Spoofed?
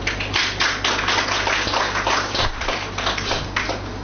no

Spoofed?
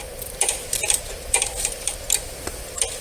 yes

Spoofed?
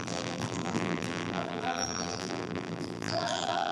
yes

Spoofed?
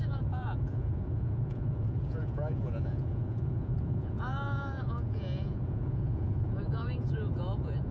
yes